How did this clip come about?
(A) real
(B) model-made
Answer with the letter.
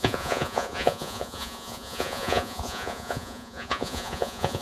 B